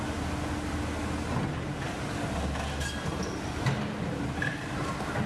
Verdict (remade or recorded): recorded